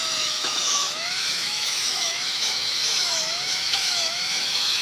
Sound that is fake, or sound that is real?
fake